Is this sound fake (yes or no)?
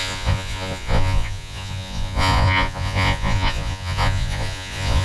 yes